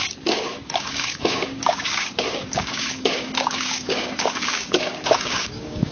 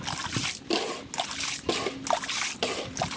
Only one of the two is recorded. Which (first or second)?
second